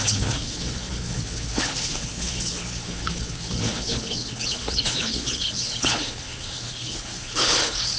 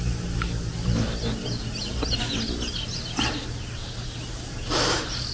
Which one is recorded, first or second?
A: second